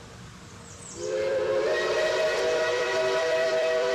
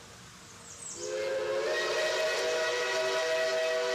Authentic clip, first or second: second